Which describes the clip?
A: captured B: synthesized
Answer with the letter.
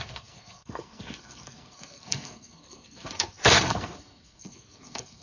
B